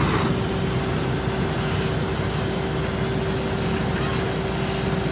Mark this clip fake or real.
real